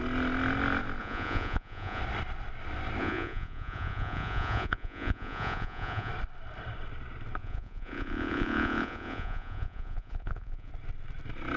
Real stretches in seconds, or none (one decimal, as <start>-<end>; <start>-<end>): 0.0-1.0; 2.0-3.0; 6.1-7.4; 10.7-11.6